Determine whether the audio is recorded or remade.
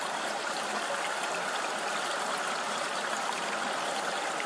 recorded